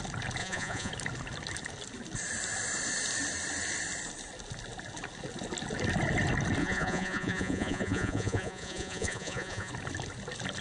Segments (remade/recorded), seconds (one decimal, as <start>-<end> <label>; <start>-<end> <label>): 0.0-0.4 recorded; 0.4-0.9 remade; 0.9-6.6 recorded; 6.6-9.7 remade; 9.7-10.6 recorded

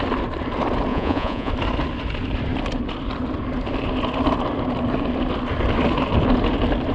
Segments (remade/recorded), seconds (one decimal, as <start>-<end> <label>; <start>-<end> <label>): 0.0-0.9 recorded; 0.9-1.5 remade; 1.5-6.9 recorded

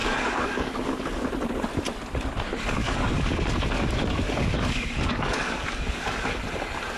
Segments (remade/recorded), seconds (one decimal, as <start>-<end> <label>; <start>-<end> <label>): 0.0-1.3 remade; 1.3-2.8 recorded; 2.8-6.4 remade; 6.4-7.0 recorded

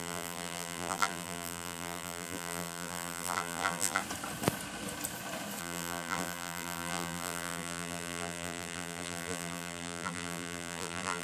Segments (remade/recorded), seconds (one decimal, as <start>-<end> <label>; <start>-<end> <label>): 0.0-4.0 remade; 4.0-5.6 recorded; 5.6-11.2 remade

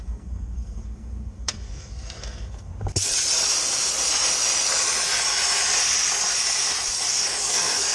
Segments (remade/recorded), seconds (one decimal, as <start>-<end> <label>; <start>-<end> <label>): 0.0-2.7 remade; 2.7-7.4 recorded; 7.4-7.9 remade